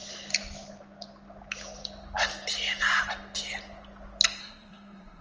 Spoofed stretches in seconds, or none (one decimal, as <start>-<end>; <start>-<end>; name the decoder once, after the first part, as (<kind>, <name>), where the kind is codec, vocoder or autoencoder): 4.4-5.2 (codec, SNAC)

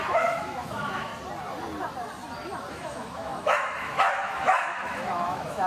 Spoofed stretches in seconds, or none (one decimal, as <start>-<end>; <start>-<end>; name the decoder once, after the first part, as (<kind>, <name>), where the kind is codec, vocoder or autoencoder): 0.0-1.1 (autoencoder, DAC-VAE); 2.7-5.7

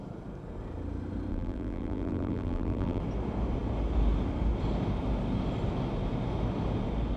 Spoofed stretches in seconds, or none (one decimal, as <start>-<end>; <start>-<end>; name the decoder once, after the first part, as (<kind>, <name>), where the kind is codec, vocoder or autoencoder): 1.3-3.0 (vocoder, BigVGAN v2)

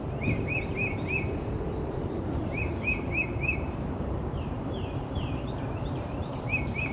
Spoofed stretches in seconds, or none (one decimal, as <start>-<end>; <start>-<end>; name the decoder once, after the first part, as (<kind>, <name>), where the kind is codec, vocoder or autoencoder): 0.6-6.9 (vocoder, BigVGAN v2)

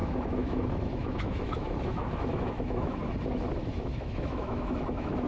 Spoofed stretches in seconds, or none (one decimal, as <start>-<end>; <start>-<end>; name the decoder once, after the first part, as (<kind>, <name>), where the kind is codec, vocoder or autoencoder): 0.0-3.0 (autoencoder, DAC-VAE); 3.6-5.3

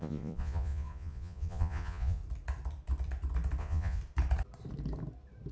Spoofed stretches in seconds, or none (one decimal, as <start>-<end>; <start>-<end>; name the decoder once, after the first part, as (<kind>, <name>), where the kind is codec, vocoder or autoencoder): 0.0-2.2 (vocoder, Vocos); 3.6-4.0

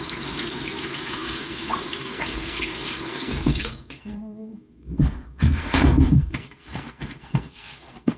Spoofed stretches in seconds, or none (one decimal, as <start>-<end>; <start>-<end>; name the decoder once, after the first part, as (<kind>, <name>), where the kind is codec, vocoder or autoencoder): 0.0-8.2 (codec, SNAC)